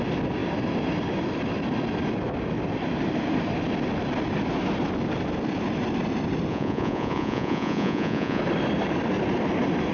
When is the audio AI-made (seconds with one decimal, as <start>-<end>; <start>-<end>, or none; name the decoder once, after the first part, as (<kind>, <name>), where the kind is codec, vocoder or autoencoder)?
6.5-8.4 (vocoder, Vocos)